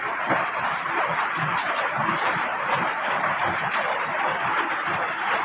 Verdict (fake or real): fake